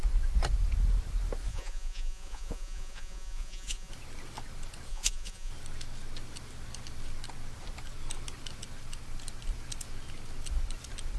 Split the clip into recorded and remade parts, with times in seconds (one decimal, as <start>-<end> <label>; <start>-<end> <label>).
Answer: 0.0-1.5 recorded; 1.5-3.9 remade; 3.9-4.9 recorded; 4.9-5.5 remade; 5.5-11.2 recorded